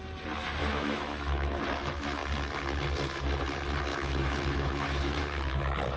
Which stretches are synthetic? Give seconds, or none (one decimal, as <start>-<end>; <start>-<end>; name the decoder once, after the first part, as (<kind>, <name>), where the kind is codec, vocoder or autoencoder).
0.6-1.6 (autoencoder, DAC-VAE); 3.9-5.2